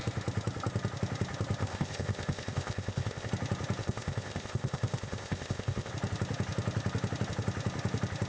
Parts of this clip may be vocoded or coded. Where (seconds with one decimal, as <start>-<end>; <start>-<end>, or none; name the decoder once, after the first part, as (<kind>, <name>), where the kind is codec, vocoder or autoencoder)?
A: 1.6-3.3 (codec, ZipCodec); 3.8-5.9